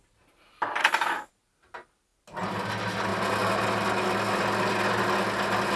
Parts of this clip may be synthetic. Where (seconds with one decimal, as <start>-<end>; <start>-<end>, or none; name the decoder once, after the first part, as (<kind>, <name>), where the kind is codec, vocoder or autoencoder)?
0.8-1.3 (codec, SNAC)